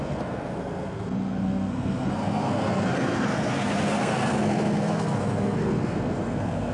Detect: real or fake fake